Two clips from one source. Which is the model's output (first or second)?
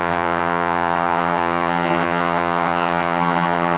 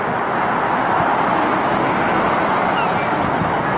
first